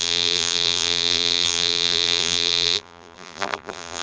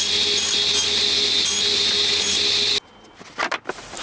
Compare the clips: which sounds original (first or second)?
second